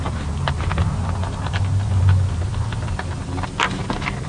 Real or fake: real